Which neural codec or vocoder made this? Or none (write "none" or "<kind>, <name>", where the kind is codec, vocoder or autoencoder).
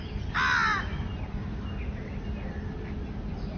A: none